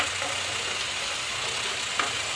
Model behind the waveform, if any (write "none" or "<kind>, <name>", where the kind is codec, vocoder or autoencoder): none